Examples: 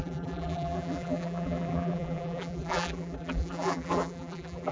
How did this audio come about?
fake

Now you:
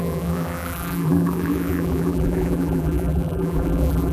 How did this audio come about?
fake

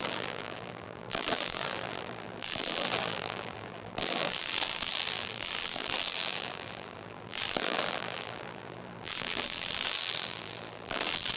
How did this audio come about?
fake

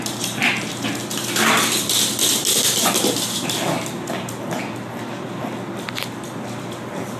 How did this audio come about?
real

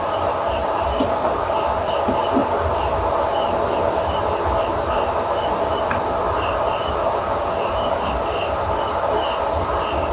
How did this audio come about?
real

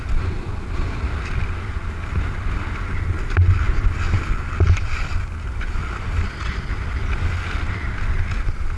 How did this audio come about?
real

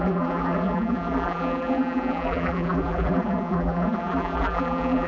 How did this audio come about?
fake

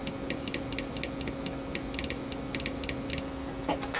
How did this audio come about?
real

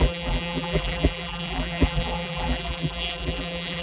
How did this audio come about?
fake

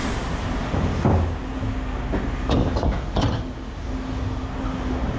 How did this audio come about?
real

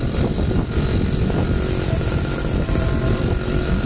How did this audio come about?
real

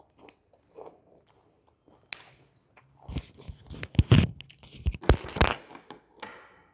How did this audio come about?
real